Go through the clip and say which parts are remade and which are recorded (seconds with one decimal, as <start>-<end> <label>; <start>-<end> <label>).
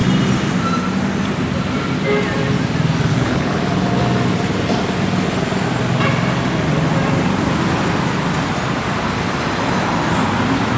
0.0-3.1 recorded; 3.1-3.6 remade; 3.6-10.8 recorded